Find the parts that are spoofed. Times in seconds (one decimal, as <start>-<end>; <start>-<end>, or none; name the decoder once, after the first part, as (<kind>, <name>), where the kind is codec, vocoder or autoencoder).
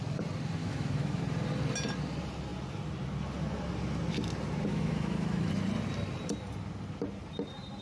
0.6-1.2 (autoencoder, DAC-VAE); 4.7-5.5